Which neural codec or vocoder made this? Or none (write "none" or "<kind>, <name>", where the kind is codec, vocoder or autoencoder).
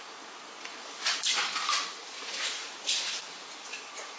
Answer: vocoder, Vocos